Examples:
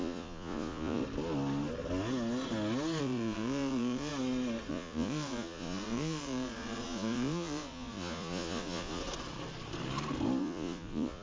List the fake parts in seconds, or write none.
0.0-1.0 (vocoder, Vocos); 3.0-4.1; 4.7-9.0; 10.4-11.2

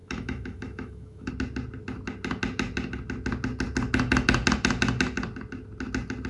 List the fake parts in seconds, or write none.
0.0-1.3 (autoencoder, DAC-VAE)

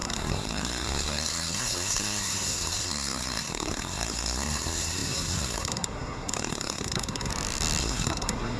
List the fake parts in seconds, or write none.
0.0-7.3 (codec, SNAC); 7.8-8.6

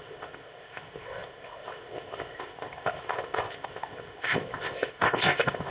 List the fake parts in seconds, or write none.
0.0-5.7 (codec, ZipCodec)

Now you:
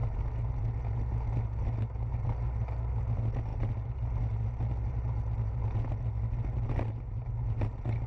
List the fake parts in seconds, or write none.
none